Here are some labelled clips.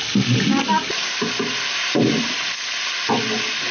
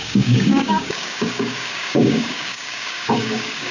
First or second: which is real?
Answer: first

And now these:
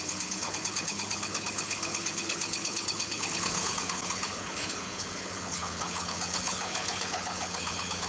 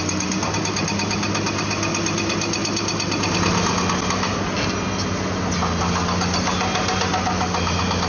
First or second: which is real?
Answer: second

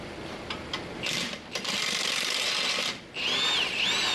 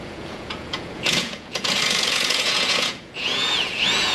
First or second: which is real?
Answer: first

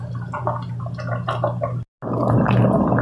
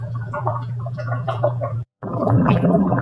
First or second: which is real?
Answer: first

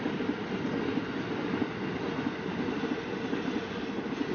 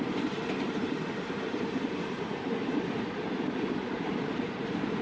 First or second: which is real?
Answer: first